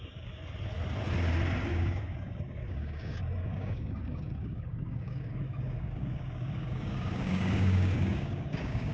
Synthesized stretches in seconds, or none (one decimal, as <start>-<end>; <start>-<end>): 0.0-0.4; 1.7-8.9